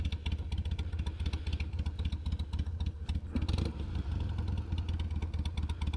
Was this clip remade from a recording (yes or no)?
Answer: no